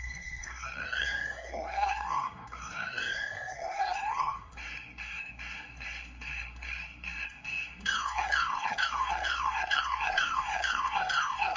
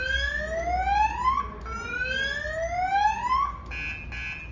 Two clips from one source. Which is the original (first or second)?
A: second